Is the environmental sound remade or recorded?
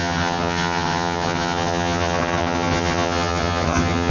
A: remade